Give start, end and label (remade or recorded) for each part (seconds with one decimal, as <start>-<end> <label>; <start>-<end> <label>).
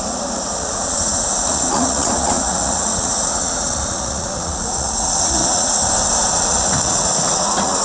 0.0-5.8 remade; 5.8-6.3 recorded; 6.3-7.8 remade